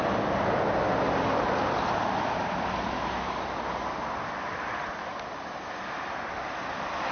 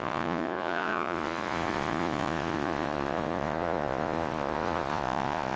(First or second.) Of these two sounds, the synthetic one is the second